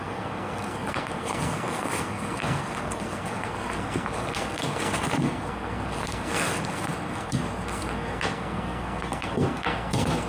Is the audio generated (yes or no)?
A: yes